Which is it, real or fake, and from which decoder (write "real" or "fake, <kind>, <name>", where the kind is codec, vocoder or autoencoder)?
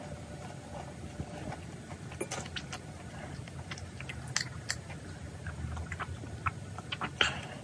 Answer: real